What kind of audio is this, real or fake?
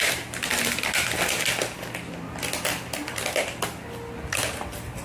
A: real